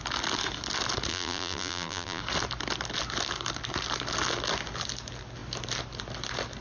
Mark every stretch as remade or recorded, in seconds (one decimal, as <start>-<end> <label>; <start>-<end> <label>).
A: 0.0-1.1 recorded; 1.1-2.2 remade; 2.2-6.6 recorded